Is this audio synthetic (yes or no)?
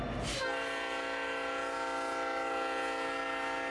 no